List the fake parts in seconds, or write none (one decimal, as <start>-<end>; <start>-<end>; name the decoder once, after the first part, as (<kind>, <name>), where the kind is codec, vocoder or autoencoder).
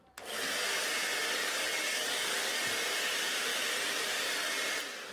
1.2-2.6 (codec, DAC)